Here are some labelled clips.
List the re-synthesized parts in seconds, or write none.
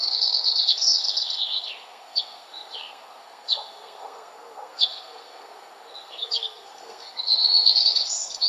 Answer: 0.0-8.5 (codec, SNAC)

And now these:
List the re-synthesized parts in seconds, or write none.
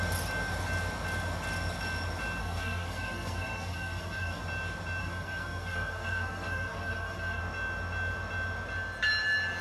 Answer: 2.4-4.4 (codec, SNAC); 5.0-7.4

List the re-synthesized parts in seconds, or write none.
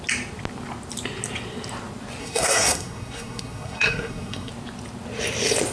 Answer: 2.2-4.5 (codec, SNAC)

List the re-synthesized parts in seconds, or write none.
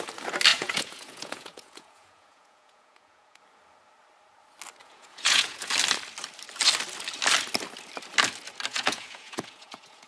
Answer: 0.5-3.4 (vocoder, Vocos); 4.8-5.7; 8.7-10.1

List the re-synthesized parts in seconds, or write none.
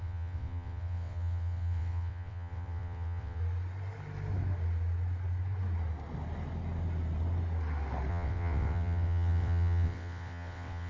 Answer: 0.0-3.4 (vocoder, WaveNeXt); 8.1-10.9